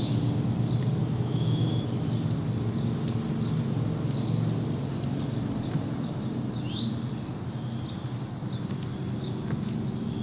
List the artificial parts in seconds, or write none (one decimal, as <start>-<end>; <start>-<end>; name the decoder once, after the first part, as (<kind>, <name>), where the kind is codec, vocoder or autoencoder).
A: 1.0-1.8 (autoencoder, DAC-VAE)